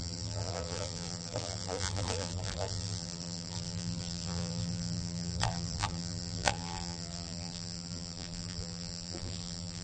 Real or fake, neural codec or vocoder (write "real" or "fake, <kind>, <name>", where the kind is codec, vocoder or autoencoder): fake, vocoder, BigVGAN v2